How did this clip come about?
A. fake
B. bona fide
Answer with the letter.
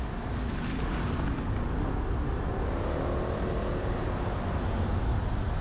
B